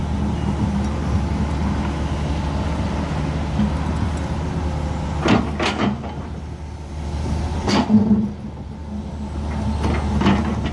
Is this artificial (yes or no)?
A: no